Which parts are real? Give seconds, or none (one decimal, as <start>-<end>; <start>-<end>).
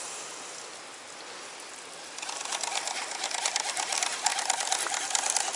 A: 0.0-5.6